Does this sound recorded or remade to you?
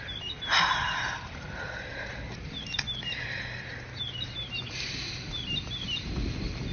recorded